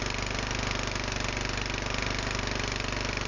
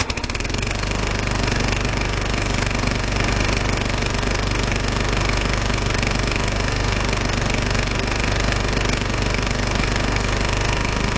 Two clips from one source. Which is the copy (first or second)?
second